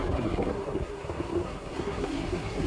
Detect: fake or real fake